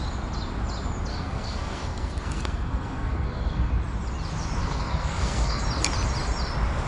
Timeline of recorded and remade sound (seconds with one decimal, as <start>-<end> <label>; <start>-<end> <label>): 0.0-1.1 recorded; 1.1-3.7 remade; 3.7-4.6 recorded; 4.6-5.6 remade; 5.6-6.9 recorded